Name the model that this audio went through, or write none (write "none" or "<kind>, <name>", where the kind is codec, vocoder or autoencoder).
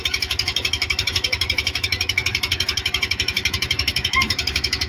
autoencoder, DAC-VAE